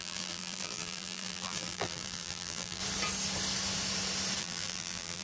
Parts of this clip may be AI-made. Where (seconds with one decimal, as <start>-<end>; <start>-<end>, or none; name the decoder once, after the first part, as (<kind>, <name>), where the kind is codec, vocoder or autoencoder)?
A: 0.0-2.8 (vocoder, BigVGAN v2); 4.4-5.2